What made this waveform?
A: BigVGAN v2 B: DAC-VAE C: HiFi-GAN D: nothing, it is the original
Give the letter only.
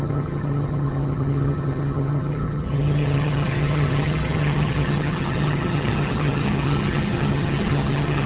C